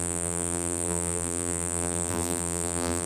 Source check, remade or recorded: remade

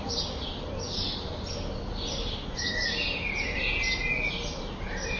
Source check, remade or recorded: recorded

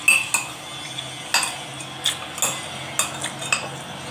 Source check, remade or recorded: recorded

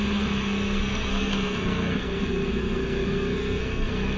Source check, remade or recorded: remade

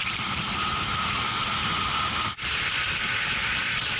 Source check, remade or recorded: remade